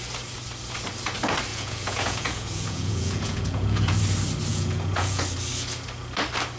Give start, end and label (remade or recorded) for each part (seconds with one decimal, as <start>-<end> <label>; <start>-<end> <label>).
0.0-1.5 recorded; 1.5-4.0 remade; 4.0-4.5 recorded; 4.5-5.2 remade; 5.2-6.6 recorded